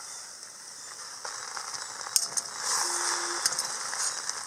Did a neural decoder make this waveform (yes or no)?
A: no